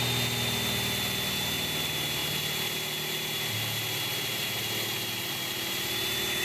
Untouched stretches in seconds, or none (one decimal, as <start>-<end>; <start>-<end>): 0.0-6.4